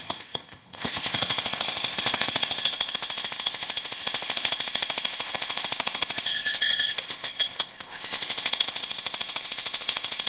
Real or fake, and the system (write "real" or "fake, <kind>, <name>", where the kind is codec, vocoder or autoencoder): fake, codec, ZipCodec